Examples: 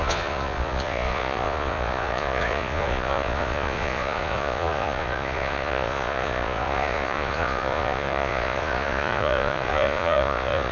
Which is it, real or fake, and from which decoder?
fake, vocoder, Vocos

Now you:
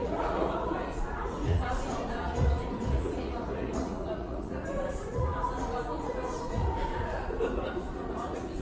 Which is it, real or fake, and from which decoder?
fake, vocoder, Vocos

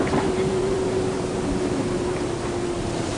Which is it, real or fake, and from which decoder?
fake, vocoder, BigVGAN v2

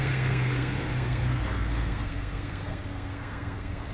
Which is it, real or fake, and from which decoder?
fake, codec, SNAC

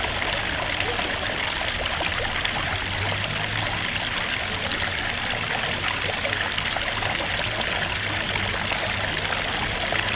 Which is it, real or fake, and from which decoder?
real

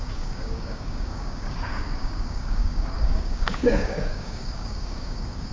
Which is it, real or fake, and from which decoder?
fake, codec, DAC